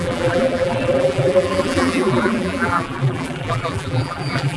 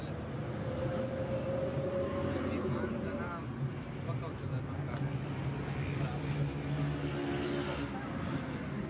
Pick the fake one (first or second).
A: first